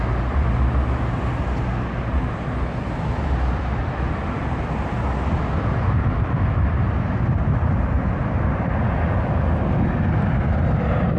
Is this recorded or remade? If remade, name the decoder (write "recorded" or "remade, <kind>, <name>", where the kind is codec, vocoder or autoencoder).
recorded